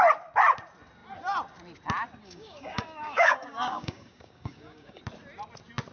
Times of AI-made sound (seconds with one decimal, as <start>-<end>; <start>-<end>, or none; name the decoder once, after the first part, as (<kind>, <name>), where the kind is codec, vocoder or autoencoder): 2.2-5.0 (codec, DAC)